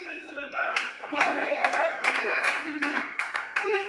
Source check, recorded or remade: remade